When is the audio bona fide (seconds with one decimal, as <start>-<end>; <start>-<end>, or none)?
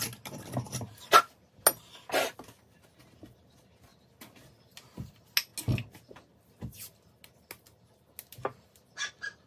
0.0-9.5